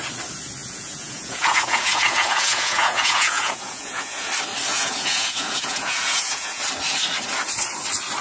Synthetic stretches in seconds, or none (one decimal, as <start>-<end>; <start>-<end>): 0.6-4.3; 4.7-6.6